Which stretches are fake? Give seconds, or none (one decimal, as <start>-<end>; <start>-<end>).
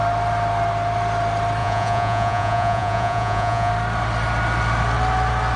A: 1.6-3.7